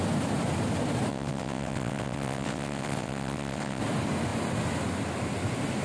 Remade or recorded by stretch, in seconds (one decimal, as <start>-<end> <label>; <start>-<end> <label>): 0.0-1.1 recorded; 1.1-3.8 remade; 3.8-5.8 recorded